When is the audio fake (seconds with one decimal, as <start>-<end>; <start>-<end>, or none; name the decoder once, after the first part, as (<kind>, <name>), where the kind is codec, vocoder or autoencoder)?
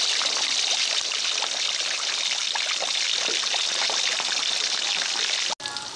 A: none